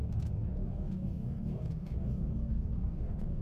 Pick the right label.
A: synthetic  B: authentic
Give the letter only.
A